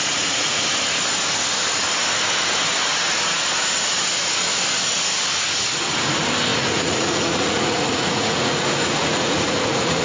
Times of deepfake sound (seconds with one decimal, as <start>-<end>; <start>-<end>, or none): 0.0-0.6; 6.5-10.0